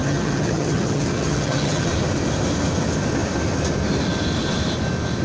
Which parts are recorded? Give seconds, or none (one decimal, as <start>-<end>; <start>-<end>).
1.9-5.2